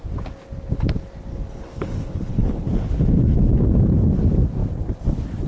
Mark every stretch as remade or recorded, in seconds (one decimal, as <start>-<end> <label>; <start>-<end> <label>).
0.0-1.3 recorded; 1.3-3.4 remade; 3.4-5.5 recorded